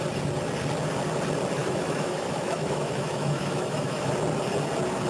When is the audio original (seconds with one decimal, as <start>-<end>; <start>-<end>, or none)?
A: 0.0-1.6; 4.1-5.1